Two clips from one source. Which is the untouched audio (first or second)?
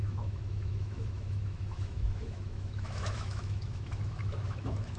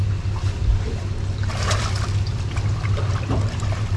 second